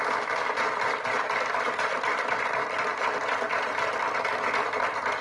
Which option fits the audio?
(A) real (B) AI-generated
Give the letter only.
B